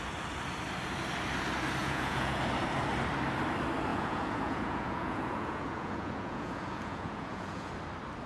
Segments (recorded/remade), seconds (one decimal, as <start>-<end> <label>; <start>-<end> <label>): 0.0-1.8 recorded; 1.8-2.4 remade; 2.4-3.9 recorded; 3.9-7.7 remade; 7.7-8.3 recorded